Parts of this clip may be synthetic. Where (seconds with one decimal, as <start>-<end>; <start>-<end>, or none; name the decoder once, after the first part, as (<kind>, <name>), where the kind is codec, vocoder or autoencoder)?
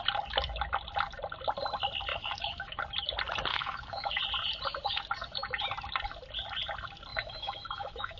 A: 2.1-2.8 (autoencoder, DAC-VAE); 3.5-4.2; 7.1-8.2